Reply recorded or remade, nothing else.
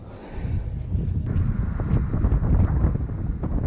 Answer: recorded